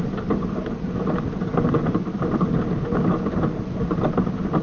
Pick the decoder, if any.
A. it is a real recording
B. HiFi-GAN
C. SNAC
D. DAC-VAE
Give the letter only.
A